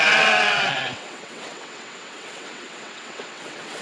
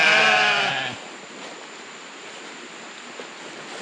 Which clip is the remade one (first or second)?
first